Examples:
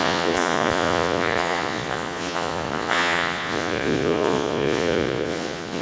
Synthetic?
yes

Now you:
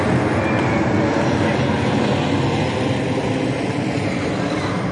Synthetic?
no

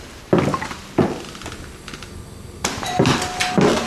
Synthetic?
no